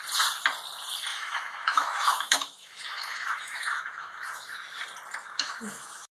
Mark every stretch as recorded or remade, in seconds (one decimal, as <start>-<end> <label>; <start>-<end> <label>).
0.0-1.1 recorded; 1.1-4.8 remade; 4.8-5.2 recorded; 5.2-6.1 remade